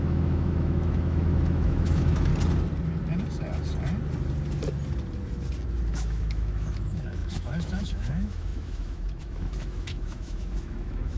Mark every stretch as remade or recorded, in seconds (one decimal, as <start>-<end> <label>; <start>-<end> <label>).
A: 0.0-2.3 remade; 2.3-5.9 recorded; 5.9-11.2 remade